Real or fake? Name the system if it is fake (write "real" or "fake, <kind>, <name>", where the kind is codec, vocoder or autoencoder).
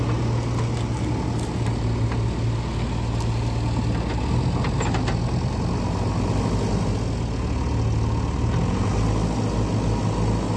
real